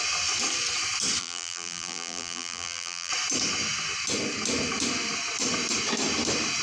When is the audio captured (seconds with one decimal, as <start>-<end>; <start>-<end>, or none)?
0.0-1.2; 3.1-6.6

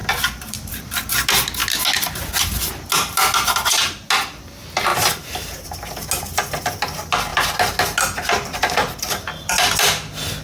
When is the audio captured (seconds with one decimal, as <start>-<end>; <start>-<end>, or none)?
1.1-4.9; 5.9-10.4